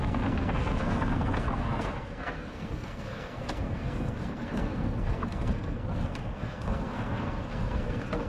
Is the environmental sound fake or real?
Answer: fake